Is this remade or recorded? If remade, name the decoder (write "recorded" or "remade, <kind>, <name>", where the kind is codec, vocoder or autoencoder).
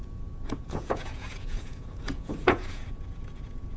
remade, vocoder, Vocos